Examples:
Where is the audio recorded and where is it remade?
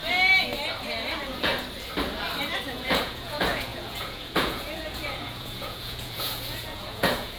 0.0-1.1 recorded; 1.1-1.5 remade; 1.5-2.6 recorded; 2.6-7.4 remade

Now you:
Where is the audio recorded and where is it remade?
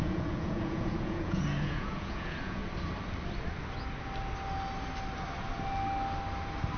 0.0-2.6 remade; 2.6-6.8 recorded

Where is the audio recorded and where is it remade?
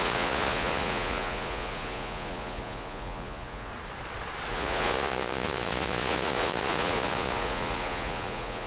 0.0-3.7 remade; 3.7-4.5 recorded; 4.5-8.7 remade